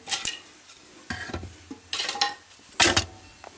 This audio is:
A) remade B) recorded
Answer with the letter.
B